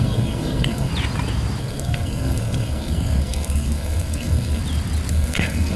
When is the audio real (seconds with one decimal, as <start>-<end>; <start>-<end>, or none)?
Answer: 0.9-1.6; 4.6-5.1